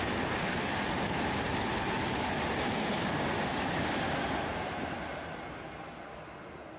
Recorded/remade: recorded